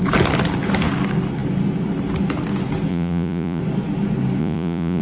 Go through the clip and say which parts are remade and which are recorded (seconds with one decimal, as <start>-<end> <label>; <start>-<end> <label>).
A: 0.0-2.9 recorded; 2.9-3.6 remade; 3.6-4.4 recorded; 4.4-5.0 remade

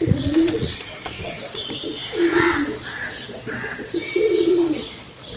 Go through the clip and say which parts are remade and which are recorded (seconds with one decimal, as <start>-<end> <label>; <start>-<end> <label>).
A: 0.0-5.4 remade

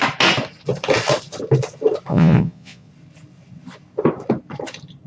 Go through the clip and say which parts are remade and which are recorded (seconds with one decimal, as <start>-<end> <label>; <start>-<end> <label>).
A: 0.0-2.1 recorded; 2.1-2.9 remade; 2.9-5.1 recorded